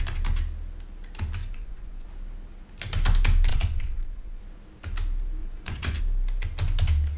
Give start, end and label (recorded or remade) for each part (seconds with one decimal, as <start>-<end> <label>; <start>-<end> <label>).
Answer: 0.0-1.4 recorded; 1.4-2.1 remade; 2.1-3.5 recorded; 3.5-4.4 remade; 4.4-5.4 recorded; 5.4-6.0 remade; 6.0-7.2 recorded